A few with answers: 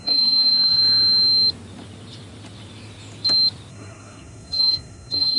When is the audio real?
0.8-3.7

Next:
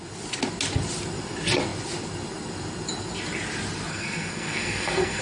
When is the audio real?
0.0-3.9